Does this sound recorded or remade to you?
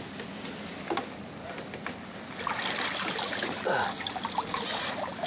recorded